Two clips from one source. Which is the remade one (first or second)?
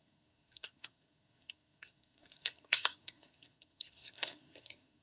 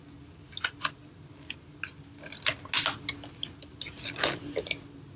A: first